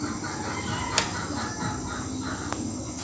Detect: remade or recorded recorded